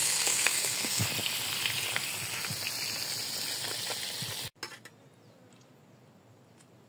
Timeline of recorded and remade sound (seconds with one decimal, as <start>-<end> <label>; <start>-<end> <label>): 0.0-1.0 remade; 1.0-6.9 recorded